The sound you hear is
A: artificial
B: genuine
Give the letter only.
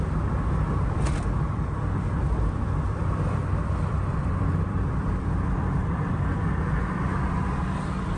A